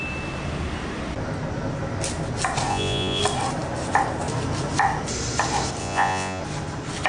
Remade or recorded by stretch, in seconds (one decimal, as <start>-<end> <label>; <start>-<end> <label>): 0.0-2.7 recorded; 2.7-3.2 remade; 3.2-5.8 recorded; 5.8-6.4 remade; 6.4-7.1 recorded